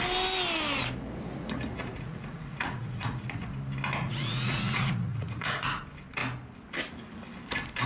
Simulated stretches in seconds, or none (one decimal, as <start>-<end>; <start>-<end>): 1.7-3.5; 4.0-5.8